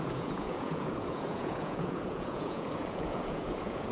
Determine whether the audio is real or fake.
fake